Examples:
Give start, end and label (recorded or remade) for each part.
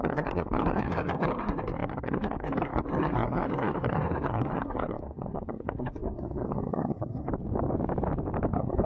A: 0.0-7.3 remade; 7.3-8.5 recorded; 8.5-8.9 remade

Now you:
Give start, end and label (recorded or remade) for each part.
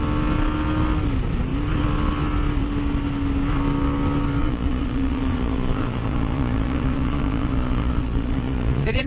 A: 0.0-4.4 recorded; 4.4-9.1 remade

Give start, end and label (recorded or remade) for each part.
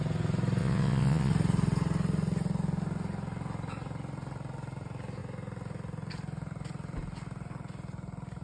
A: 0.0-0.6 recorded; 0.6-1.3 remade; 1.3-8.4 recorded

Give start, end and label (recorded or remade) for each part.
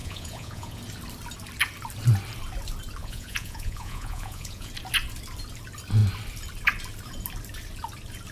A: 0.0-0.8 remade; 0.8-3.0 recorded; 3.0-4.7 remade; 4.7-8.3 recorded